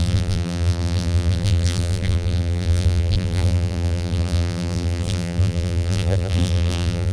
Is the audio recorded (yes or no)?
no